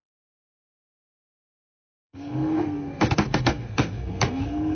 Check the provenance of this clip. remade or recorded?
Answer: remade